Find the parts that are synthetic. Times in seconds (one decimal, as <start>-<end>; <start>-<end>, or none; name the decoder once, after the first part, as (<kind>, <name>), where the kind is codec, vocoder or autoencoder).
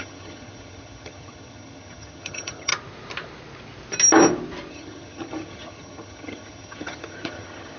0.0-2.7 (vocoder, HiFi-GAN); 4.7-7.8